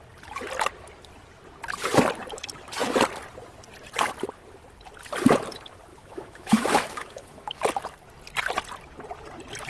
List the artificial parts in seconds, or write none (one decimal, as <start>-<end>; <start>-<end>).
5.9-7.6